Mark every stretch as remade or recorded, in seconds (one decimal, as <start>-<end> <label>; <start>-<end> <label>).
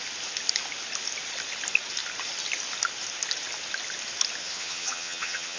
0.0-4.4 recorded; 4.4-5.6 remade